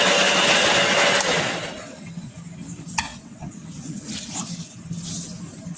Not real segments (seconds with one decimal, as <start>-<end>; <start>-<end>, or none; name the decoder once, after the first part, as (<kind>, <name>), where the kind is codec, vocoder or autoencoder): 3.1-4.3 (vocoder, WaveNeXt)